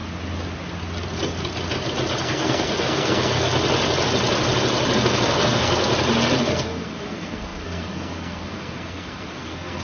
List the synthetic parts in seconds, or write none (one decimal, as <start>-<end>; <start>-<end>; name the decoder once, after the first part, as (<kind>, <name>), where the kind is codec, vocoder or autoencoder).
2.2-3.5 (codec, SNAC); 5.0-5.9; 6.4-9.8